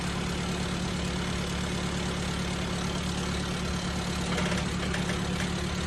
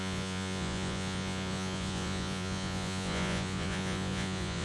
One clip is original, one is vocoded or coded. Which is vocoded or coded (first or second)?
second